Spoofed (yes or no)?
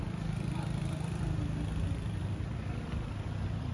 yes